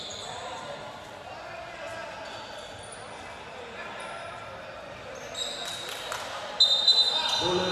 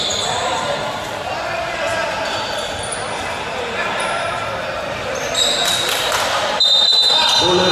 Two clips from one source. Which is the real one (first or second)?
first